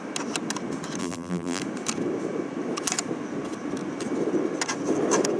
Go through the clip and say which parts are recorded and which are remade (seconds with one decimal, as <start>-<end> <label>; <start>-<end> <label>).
0.0-1.0 recorded; 1.0-1.6 remade; 1.6-5.4 recorded